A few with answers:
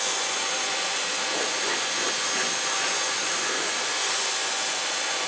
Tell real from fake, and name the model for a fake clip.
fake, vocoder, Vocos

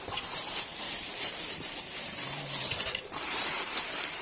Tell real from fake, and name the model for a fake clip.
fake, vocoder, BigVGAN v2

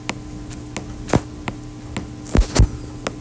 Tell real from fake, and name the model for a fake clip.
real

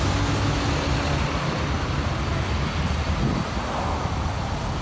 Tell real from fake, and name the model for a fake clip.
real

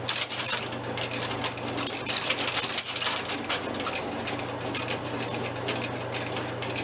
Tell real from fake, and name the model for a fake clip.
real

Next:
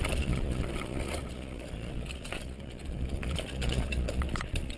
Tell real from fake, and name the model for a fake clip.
fake, vocoder, Vocos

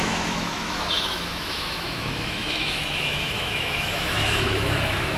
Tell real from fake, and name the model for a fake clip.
fake, autoencoder, DAC-VAE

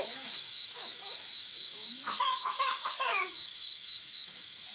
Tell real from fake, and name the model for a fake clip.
fake, autoencoder, DAC-VAE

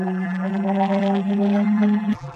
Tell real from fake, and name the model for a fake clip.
fake, vocoder, BigVGAN v2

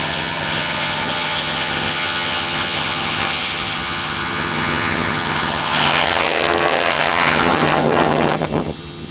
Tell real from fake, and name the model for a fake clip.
fake, vocoder, HiFi-GAN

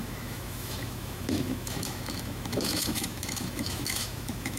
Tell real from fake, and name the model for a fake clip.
fake, autoencoder, DAC-VAE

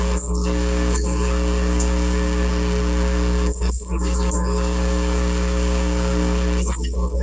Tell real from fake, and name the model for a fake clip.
fake, codec, SNAC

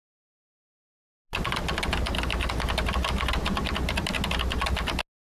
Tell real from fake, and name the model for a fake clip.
real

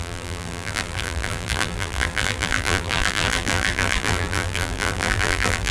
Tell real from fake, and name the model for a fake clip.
fake, vocoder, BigVGAN v2